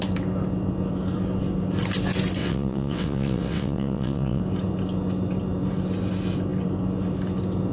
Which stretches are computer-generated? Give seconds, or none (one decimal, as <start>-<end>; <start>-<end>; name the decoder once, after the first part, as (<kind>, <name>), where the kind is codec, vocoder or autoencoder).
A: 2.4-4.4 (vocoder, WaveNeXt)